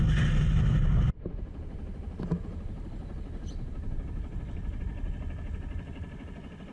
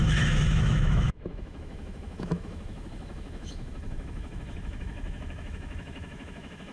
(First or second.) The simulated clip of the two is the second